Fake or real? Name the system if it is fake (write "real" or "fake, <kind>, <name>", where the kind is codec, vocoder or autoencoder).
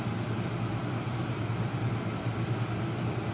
real